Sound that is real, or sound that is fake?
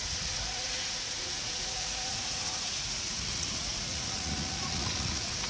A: fake